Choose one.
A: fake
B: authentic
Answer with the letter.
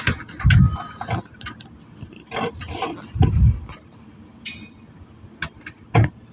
B